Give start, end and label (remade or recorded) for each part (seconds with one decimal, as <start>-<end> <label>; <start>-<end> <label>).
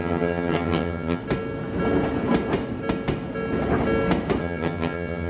0.0-1.2 remade; 1.2-4.4 recorded; 4.4-5.3 remade